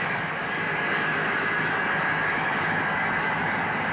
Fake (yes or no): yes